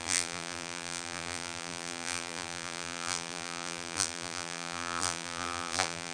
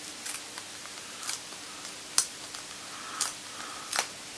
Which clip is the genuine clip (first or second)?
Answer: second